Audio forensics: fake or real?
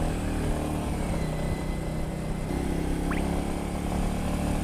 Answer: real